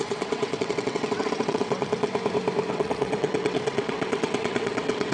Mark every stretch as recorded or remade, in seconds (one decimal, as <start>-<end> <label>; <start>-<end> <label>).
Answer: 0.0-2.1 remade; 2.1-2.7 recorded; 2.7-5.1 remade